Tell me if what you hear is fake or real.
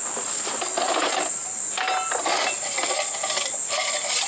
real